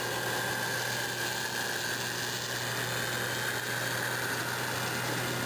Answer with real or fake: real